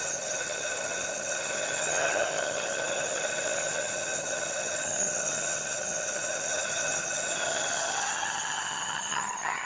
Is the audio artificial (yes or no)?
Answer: yes